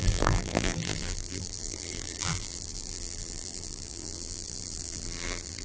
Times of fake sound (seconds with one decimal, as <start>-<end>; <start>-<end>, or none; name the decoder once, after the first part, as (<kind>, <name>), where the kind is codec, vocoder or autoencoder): 0.0-5.6 (vocoder, BigVGAN v2)